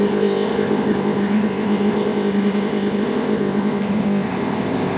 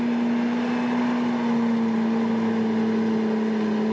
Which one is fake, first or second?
first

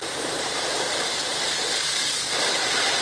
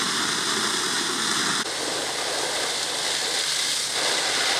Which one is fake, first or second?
first